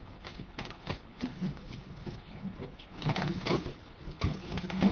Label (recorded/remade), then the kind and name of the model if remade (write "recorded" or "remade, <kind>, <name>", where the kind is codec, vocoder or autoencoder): remade, codec, HILCodec